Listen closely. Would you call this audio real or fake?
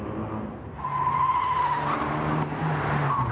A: real